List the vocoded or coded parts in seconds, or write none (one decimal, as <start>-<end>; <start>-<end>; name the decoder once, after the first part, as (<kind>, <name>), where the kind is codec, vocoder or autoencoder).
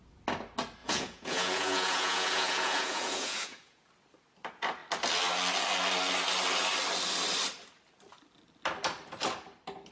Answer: 0.8-3.9 (vocoder, Vocos)